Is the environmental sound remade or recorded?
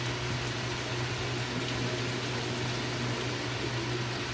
recorded